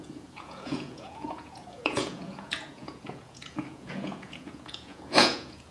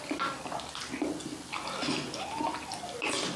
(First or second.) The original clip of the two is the second